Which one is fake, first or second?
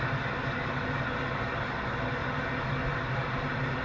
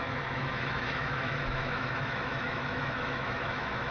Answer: second